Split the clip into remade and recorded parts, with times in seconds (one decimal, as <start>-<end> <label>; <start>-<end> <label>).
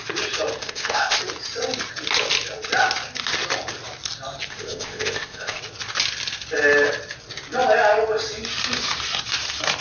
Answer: 0.0-0.6 recorded; 0.6-1.2 remade; 1.2-4.5 recorded; 4.5-5.6 remade; 5.6-9.8 recorded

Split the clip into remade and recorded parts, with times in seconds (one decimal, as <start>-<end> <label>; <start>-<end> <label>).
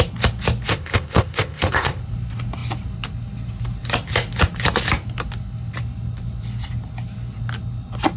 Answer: 0.0-0.7 recorded; 0.7-2.0 remade; 2.0-8.2 recorded